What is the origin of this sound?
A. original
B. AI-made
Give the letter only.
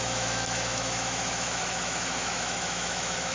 B